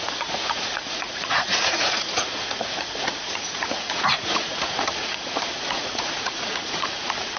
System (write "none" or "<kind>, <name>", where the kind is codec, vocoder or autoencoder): vocoder, Vocos